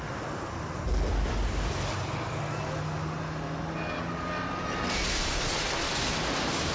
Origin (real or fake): real